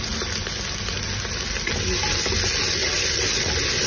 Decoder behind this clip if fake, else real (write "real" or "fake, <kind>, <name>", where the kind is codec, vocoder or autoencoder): real